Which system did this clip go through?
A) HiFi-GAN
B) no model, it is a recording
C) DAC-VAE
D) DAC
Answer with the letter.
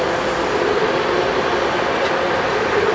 B